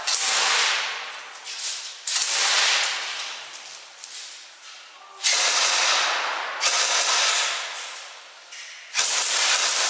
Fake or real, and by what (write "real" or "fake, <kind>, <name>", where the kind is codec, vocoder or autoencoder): fake, vocoder, BigVGAN v2